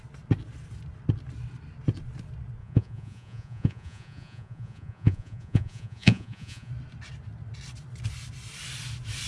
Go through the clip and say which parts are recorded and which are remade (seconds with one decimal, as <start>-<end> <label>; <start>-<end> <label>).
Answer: 0.0-2.6 recorded; 2.6-6.7 remade; 6.7-9.3 recorded